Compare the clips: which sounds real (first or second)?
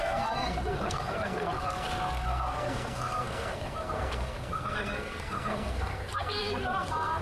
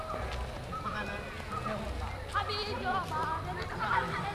second